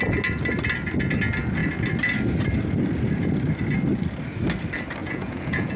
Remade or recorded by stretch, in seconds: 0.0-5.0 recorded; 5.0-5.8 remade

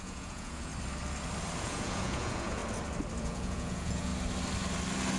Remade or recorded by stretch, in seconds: 0.0-0.7 remade; 0.7-1.6 recorded; 1.6-2.6 remade; 2.6-3.2 recorded; 3.2-4.1 remade; 4.1-5.2 recorded

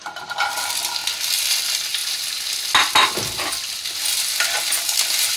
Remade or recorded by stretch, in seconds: 0.0-5.4 recorded